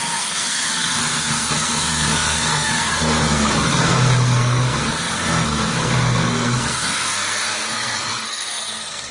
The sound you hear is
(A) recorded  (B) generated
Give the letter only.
B